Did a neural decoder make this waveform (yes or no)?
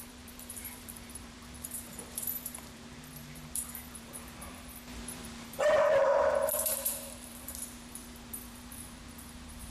yes